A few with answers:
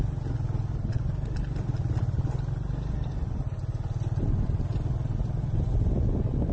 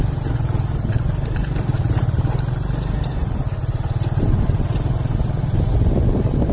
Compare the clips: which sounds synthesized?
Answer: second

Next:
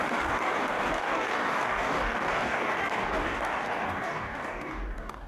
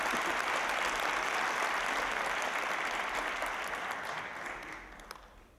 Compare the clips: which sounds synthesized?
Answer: first